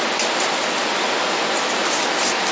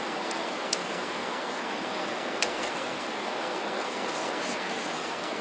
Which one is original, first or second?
first